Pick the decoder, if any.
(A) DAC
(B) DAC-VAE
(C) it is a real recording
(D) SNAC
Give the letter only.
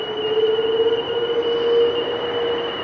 C